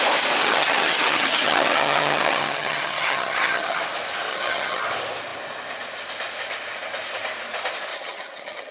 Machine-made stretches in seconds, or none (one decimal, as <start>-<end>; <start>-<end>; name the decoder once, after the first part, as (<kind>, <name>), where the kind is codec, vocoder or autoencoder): 0.4-3.8 (vocoder, HiFi-GAN); 4.3-4.8; 7.9-8.7